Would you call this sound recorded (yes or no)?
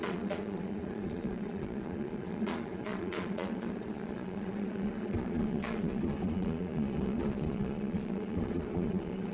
no